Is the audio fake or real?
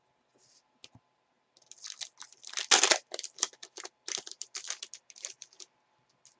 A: real